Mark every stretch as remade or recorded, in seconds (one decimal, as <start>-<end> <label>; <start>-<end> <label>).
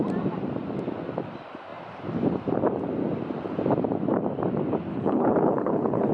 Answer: 0.0-4.9 recorded; 4.9-6.1 remade